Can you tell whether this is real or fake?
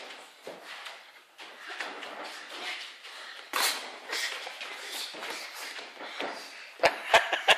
real